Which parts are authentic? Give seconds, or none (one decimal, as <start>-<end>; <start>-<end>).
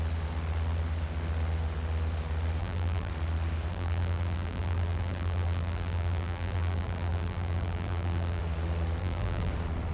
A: 0.0-2.6; 3.1-3.7; 8.4-9.0; 9.5-9.9